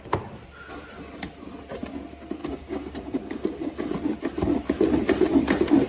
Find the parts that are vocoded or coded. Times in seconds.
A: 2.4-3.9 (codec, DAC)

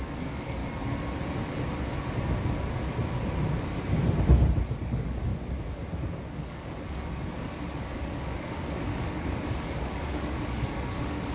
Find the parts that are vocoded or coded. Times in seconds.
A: 0.0-0.6 (codec, DAC); 4.7-5.3; 6.3-11.3

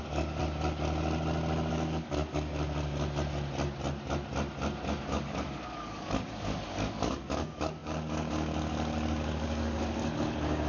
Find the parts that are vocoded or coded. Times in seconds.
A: 0.0-0.4 (codec, DAC); 1.7-2.5; 5.0-10.7

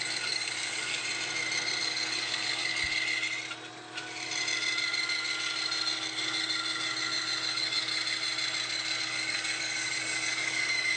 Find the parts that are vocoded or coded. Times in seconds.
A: 0.0-1.0 (codec, DAC); 1.8-2.7; 7.5-7.9; 9.0-11.0

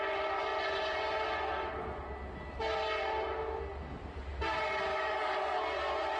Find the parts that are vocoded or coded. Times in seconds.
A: 4.9-5.6 (codec, DAC)

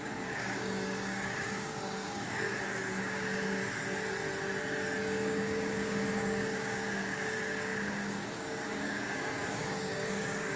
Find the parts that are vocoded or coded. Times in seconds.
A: 0.0-2.5 (codec, DAC); 3.0-3.6; 5.0-10.6